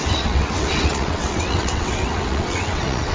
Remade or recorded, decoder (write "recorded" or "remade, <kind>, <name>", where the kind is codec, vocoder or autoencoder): remade, vocoder, WaveNeXt